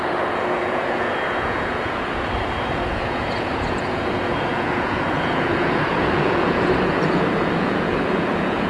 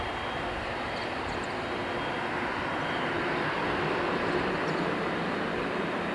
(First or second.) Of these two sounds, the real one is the second